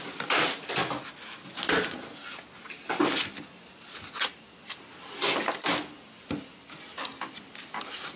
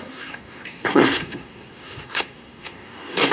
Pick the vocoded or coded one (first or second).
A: second